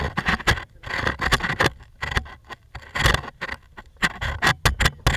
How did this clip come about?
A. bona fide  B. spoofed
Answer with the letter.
A